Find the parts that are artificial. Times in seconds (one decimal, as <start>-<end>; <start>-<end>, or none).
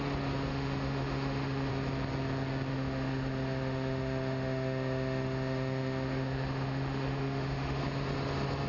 0.5-1.7; 2.7-7.8